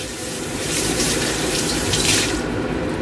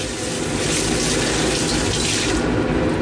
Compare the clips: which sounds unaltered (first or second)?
second